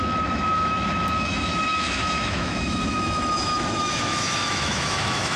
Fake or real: fake